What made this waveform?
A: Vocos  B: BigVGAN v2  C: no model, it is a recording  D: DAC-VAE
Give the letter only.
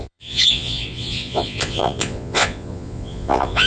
A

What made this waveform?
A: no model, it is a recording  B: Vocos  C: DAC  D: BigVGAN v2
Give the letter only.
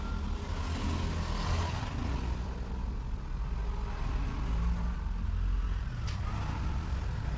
A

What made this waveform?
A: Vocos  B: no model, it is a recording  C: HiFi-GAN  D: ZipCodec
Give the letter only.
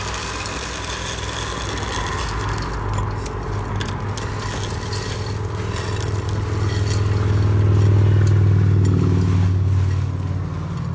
B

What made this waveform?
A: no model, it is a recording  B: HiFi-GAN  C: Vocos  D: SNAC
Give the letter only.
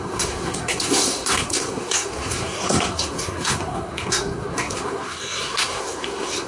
D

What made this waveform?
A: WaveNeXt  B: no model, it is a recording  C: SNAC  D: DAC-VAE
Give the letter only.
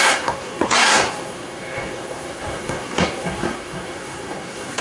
C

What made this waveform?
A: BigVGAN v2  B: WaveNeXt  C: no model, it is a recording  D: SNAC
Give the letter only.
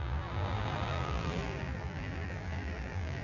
A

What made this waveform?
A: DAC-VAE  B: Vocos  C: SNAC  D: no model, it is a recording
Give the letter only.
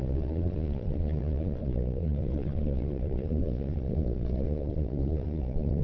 B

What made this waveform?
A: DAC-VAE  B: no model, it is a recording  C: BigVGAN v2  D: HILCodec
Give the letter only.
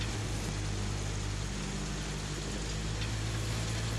B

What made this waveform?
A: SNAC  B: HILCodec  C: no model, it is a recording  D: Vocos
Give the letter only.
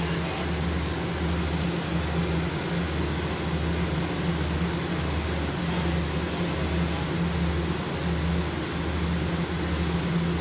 C